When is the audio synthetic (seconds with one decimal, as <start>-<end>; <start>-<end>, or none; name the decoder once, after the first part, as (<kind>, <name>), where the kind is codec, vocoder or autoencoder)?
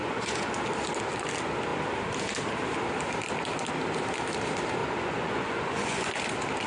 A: 0.0-0.5 (vocoder, Vocos); 4.8-6.1